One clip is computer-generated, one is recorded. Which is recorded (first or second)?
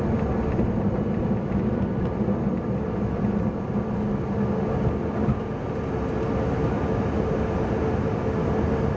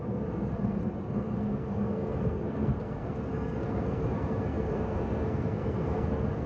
first